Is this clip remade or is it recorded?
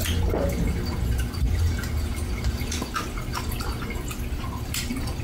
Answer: recorded